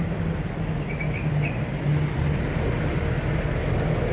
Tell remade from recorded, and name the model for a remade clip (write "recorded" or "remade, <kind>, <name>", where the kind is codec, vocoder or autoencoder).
recorded